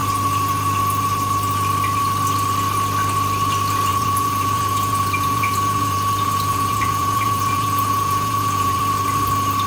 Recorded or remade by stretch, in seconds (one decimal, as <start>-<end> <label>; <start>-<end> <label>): 0.0-3.9 recorded; 3.9-8.8 remade; 8.8-9.7 recorded